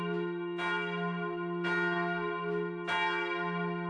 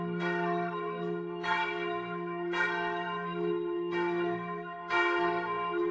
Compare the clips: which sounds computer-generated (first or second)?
second